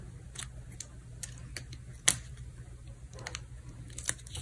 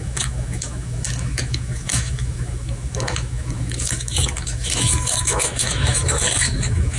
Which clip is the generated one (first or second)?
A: second